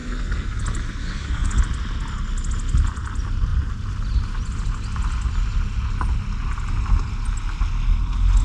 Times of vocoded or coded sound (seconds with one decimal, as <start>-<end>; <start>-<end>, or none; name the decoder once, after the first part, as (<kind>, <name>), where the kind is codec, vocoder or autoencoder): 0.0-0.6 (codec, SNAC); 1.0-1.6

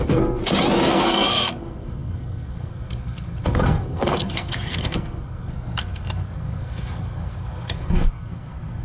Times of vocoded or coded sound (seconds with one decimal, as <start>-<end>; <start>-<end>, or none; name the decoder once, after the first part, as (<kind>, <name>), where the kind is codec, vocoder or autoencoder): 0.0-0.4 (codec, SNAC); 0.9-8.8